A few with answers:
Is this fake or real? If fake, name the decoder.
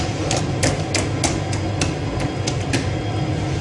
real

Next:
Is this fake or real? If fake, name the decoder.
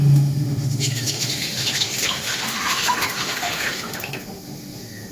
fake, autoencoder, DAC-VAE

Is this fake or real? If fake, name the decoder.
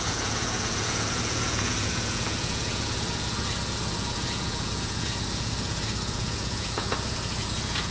fake, vocoder, Vocos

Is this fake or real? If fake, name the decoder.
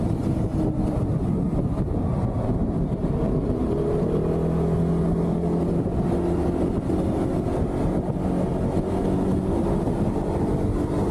real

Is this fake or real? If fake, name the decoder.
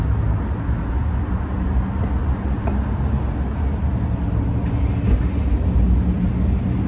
real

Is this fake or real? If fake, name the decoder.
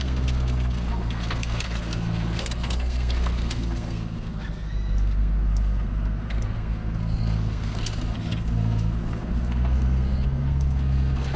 fake, codec, SNAC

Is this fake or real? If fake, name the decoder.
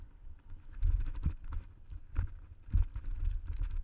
real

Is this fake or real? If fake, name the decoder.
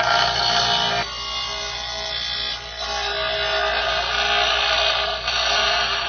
real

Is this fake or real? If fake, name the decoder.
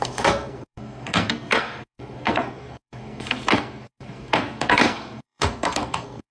fake, codec, SNAC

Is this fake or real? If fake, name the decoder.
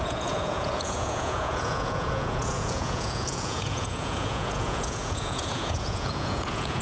fake, vocoder, Vocos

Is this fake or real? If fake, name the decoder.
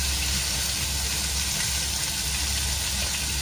real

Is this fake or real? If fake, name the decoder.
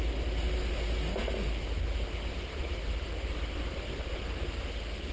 real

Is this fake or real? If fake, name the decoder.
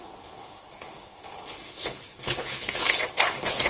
fake, codec, HILCodec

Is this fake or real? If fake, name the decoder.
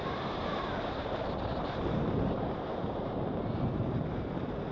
fake, vocoder, BigVGAN v2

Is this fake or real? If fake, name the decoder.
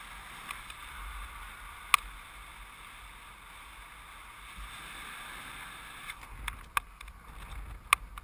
real